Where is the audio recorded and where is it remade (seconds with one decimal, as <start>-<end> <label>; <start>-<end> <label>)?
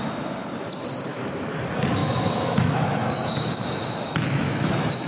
0.0-1.1 recorded; 1.1-1.6 remade; 1.6-2.0 recorded; 2.0-5.1 remade